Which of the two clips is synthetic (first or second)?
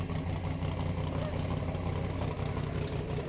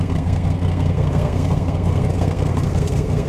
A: second